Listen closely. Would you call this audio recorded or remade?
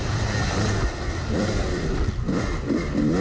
remade